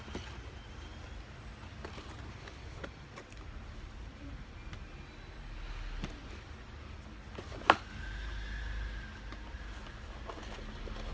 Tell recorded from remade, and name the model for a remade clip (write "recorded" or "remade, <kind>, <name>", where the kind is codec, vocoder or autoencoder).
recorded